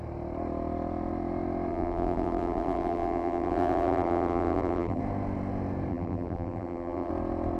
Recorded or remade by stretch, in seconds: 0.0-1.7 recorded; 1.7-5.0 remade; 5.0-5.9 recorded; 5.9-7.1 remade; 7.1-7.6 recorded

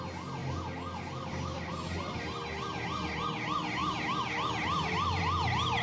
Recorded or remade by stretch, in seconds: 0.0-5.8 recorded

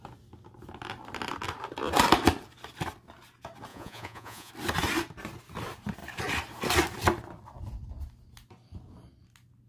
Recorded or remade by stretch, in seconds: 0.0-3.7 recorded; 3.7-4.5 remade; 4.5-9.7 recorded

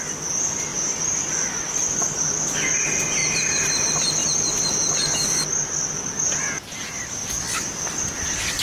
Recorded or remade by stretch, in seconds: 0.0-0.7 recorded; 0.7-2.0 remade; 2.0-3.2 recorded; 3.2-3.8 remade; 3.8-8.6 recorded